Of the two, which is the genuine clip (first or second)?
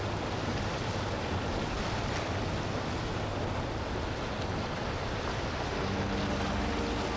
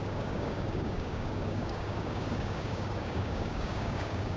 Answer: first